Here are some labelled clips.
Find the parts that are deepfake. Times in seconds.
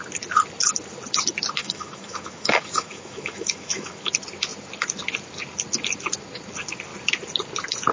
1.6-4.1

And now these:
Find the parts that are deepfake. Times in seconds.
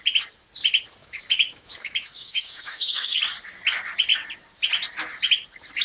1.0-3.2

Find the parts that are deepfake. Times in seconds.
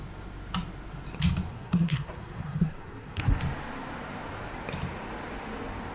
1.5-3.4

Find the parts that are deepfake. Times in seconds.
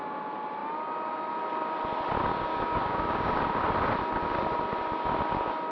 2.3-3.4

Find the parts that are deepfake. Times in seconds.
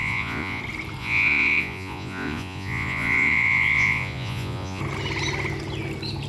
0.0-0.6; 1.0-4.8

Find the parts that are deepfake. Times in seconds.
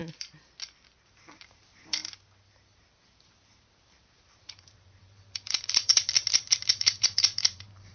1.1-2.0; 2.6-5.9; 6.7-7.9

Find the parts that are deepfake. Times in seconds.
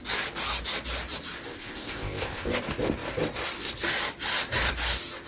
1.5-2.6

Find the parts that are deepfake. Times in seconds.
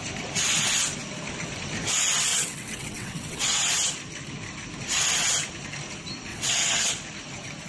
2.3-3.7; 6.3-6.9